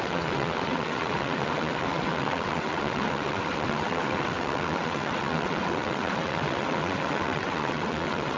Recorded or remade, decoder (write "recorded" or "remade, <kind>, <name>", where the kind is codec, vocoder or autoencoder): remade, vocoder, WaveNeXt